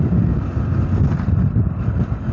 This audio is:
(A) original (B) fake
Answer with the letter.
A